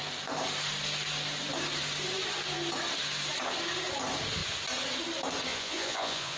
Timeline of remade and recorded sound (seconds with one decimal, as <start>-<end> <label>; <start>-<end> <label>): 0.0-5.5 recorded; 5.5-6.4 remade

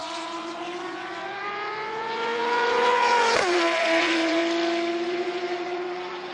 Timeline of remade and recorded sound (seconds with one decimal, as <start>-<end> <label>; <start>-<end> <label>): 0.0-4.4 remade; 4.4-5.1 recorded; 5.1-6.3 remade

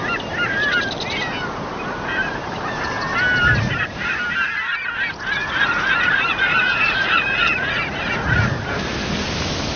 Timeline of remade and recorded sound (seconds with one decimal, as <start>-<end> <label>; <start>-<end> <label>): 0.0-5.4 recorded; 5.4-8.4 remade; 8.4-9.8 recorded

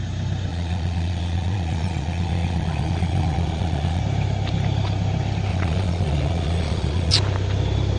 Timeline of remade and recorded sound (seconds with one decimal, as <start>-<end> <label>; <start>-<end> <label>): 0.0-0.5 recorded; 0.5-4.0 remade; 4.0-5.5 recorded; 5.5-7.1 remade; 7.1-8.0 recorded